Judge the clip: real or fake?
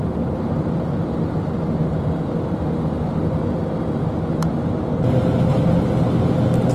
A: real